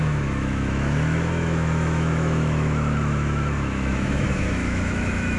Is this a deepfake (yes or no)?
yes